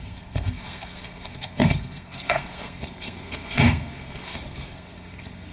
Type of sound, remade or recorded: remade